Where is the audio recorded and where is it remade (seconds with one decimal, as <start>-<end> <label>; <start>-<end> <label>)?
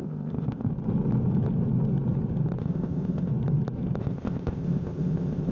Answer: 0.0-0.7 remade; 0.7-2.6 recorded; 2.6-3.3 remade; 3.3-4.0 recorded; 4.0-5.5 remade